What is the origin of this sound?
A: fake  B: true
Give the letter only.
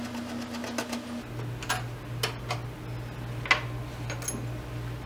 B